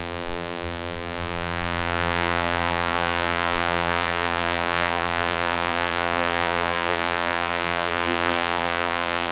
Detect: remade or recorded remade